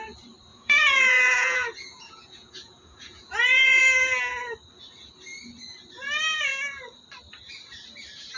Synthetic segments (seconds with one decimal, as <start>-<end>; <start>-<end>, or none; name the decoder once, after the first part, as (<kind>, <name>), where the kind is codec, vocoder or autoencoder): 0.5-3.8 (vocoder, Vocos)